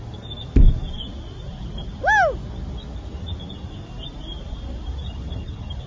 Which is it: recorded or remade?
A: recorded